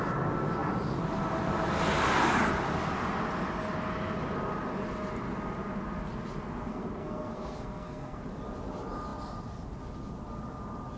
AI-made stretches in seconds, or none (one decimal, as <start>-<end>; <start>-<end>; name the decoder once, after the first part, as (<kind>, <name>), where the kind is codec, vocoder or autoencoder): 6.7-8.2 (codec, SNAC)